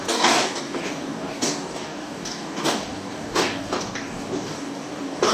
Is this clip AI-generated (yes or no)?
yes